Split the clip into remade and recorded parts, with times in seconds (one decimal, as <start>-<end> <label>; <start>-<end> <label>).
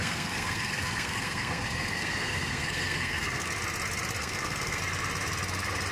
0.0-3.5 remade; 3.5-4.2 recorded; 4.2-4.8 remade; 4.8-5.9 recorded